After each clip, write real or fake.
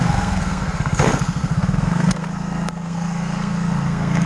fake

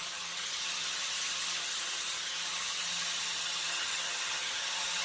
fake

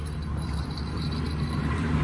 fake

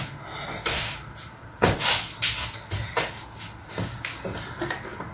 real